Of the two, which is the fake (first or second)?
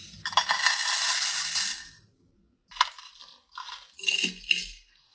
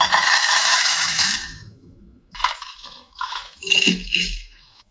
second